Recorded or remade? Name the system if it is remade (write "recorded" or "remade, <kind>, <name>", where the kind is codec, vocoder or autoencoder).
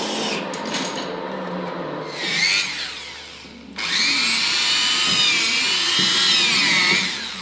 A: recorded